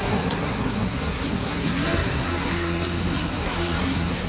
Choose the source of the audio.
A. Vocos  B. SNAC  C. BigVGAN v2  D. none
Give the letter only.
B